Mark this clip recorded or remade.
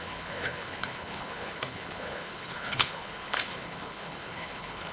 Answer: remade